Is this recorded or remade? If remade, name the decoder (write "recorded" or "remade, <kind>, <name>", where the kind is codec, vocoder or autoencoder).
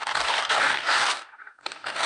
remade, codec, DAC